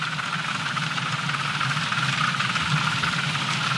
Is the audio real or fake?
real